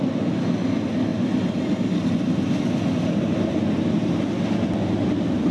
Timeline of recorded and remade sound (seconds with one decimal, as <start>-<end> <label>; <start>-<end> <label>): 0.0-5.5 recorded